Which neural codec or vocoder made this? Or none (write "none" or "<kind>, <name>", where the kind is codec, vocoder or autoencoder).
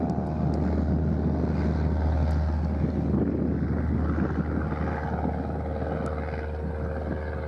none